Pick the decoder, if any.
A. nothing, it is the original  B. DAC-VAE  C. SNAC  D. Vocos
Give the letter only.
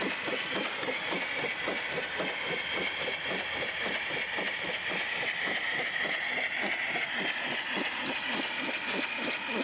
A